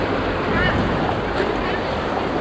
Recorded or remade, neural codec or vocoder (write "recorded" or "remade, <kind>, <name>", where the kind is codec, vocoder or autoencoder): remade, vocoder, BigVGAN v2